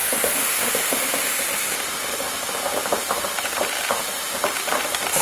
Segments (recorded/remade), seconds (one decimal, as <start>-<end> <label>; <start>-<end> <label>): 0.0-1.4 remade; 1.4-5.2 recorded